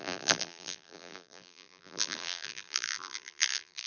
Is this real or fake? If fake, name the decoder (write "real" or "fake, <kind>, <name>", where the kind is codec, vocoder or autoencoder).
fake, vocoder, BigVGAN v2